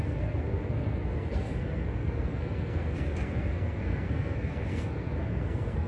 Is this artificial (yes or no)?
yes